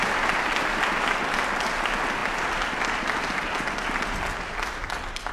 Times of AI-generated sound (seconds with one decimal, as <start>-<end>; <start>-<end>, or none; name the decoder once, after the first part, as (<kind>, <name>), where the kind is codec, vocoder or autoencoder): none